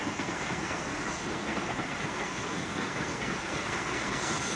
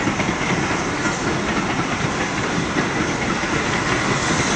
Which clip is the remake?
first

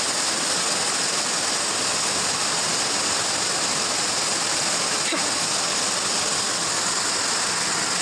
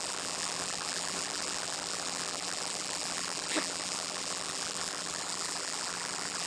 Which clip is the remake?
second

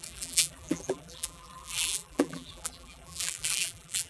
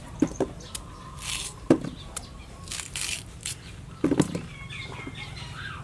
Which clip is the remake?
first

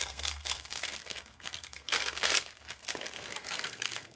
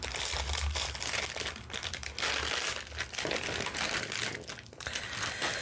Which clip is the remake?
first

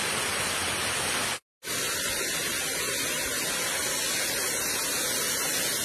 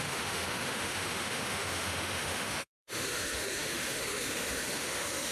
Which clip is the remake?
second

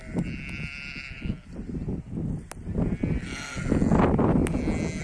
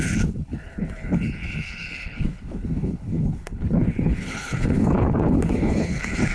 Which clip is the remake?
second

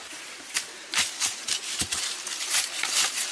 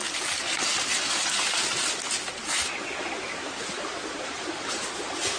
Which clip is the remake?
first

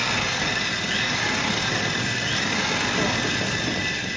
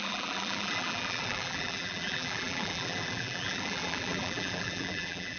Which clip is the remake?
second